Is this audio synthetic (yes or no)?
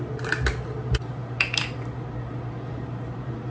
no